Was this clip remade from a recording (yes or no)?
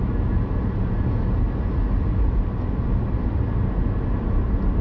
no